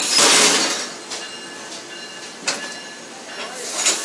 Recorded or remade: recorded